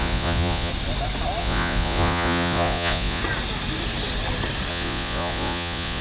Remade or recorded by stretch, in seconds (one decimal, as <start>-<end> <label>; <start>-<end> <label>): 0.0-0.7 remade; 0.7-1.4 recorded; 1.4-3.2 remade; 3.2-4.7 recorded; 4.7-6.0 remade